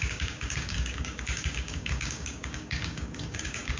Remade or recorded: remade